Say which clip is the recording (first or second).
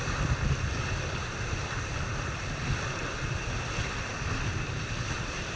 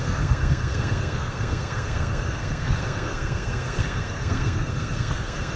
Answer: first